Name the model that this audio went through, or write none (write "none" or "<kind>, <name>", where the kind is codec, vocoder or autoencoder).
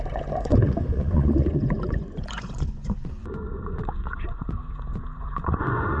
vocoder, Vocos